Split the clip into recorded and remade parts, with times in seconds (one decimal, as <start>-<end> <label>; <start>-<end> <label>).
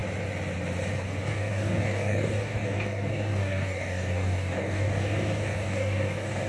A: 0.0-1.2 recorded; 1.2-6.5 remade